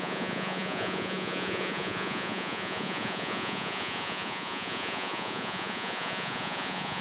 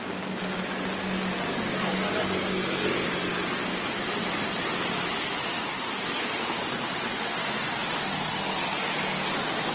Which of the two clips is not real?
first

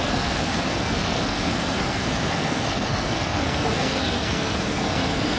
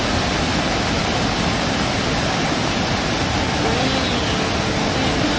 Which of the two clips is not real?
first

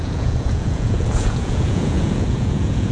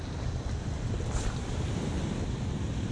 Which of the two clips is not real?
first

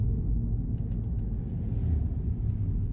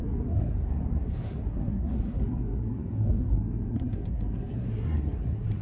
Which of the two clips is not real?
second